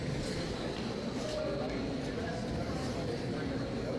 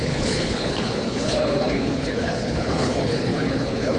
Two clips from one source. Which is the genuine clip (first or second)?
first